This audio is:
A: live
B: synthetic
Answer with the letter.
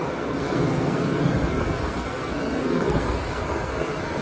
B